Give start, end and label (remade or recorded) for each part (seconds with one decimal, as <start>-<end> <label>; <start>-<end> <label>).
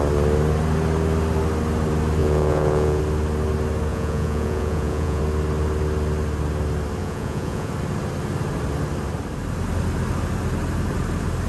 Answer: 0.0-2.2 recorded; 2.2-3.0 remade; 3.0-3.9 recorded; 3.9-5.2 remade; 5.2-7.0 recorded; 7.0-7.7 remade; 7.7-11.5 recorded